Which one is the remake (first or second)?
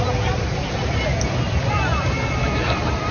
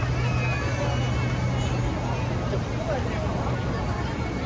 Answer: first